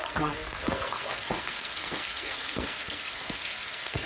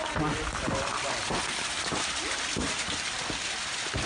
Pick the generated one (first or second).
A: first